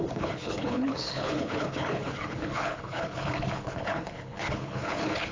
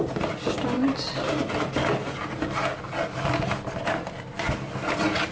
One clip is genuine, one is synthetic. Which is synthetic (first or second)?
first